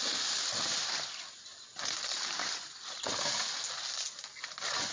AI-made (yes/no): no